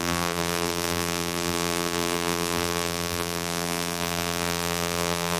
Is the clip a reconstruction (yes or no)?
yes